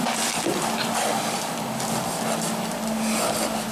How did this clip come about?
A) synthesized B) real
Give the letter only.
B